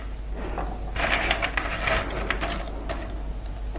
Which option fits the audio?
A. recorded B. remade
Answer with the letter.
A